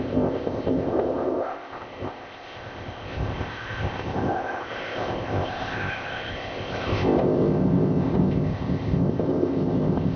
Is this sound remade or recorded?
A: remade